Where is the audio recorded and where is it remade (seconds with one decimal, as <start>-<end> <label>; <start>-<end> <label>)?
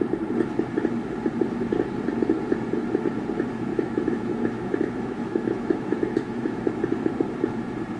0.0-3.7 recorded; 3.7-6.7 remade; 6.7-8.0 recorded